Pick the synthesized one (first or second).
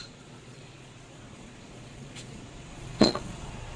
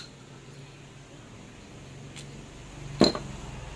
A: first